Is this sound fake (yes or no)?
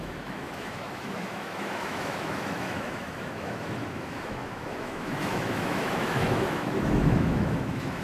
yes